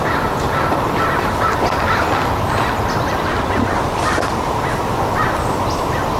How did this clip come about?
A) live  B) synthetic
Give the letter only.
A